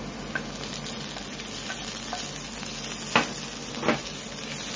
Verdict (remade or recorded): recorded